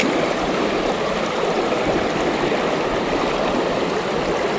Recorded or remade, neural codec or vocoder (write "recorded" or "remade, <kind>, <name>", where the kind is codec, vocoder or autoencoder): recorded